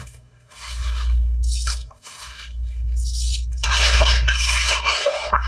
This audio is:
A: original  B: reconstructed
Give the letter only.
B